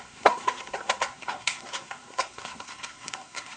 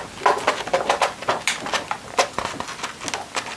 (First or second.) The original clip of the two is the second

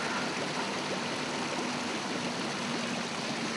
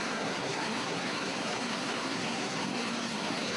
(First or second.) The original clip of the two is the first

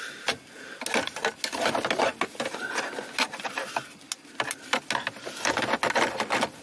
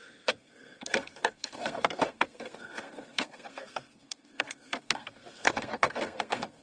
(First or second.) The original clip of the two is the first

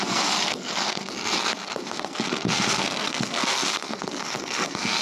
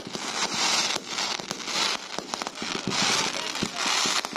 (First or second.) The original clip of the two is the second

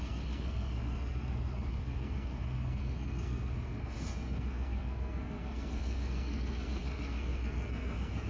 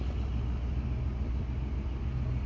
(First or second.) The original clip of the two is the second